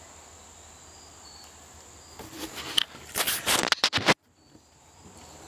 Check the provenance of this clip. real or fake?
real